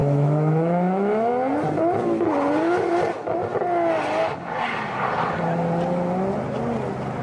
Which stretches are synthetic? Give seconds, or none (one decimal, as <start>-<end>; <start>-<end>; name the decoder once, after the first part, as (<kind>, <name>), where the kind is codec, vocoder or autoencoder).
0.0-1.3 (autoencoder, DAC-VAE)